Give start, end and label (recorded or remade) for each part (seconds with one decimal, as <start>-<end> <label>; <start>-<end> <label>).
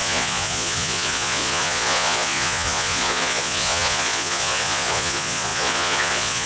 0.0-6.5 remade